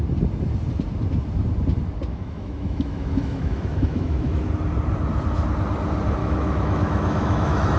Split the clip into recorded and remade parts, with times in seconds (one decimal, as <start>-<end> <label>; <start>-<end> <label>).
0.0-2.1 recorded; 2.1-4.5 remade; 4.5-6.2 recorded; 6.2-7.8 remade